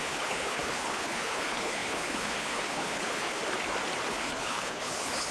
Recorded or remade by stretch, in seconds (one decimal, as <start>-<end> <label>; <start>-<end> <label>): 0.0-3.4 remade; 3.4-4.1 recorded; 4.1-5.3 remade